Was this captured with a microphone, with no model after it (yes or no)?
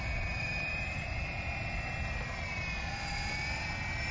yes